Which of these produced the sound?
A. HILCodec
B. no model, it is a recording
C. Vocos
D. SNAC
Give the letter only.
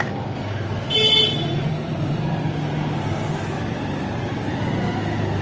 B